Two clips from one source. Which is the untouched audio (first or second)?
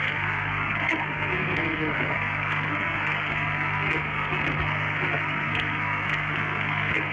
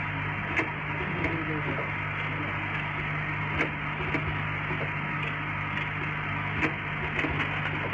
second